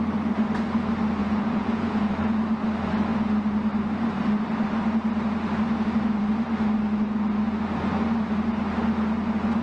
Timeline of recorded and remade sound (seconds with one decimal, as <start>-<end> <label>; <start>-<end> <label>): 0.0-1.2 recorded; 1.2-2.1 remade; 2.1-9.6 recorded